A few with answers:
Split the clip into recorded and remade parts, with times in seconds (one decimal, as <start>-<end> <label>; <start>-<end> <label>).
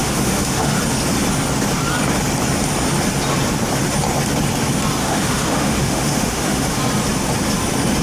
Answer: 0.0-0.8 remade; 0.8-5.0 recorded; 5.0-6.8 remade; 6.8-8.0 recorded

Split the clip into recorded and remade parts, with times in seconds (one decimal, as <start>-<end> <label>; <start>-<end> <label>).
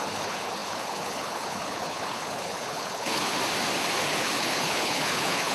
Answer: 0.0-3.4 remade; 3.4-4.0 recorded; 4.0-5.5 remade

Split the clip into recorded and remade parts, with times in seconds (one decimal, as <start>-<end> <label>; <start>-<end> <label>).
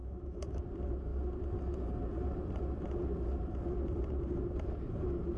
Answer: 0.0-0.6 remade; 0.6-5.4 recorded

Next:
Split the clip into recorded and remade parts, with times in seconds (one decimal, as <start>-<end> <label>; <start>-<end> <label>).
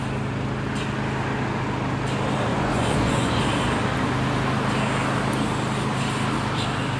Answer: 0.0-2.5 recorded; 2.5-3.4 remade; 3.4-7.0 recorded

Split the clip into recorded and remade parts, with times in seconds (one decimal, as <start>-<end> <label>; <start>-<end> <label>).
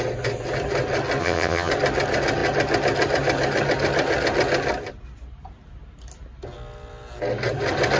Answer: 0.0-1.2 recorded; 1.2-1.7 remade; 1.7-8.0 recorded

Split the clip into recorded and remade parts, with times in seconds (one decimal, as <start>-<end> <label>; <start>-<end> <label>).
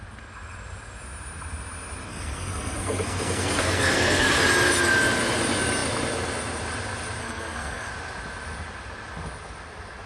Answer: 0.0-2.1 recorded; 2.1-4.4 remade; 4.4-7.2 recorded; 7.2-7.9 remade; 7.9-10.1 recorded